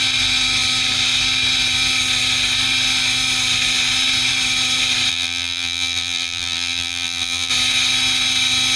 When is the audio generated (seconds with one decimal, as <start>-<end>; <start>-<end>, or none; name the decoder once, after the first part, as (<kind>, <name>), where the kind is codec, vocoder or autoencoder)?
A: 5.1-7.5 (vocoder, BigVGAN v2)